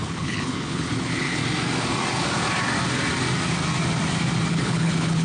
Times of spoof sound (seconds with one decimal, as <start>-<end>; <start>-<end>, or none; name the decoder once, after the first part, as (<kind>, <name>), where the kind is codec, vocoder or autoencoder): 0.0-1.4 (codec, HILCodec); 4.5-5.2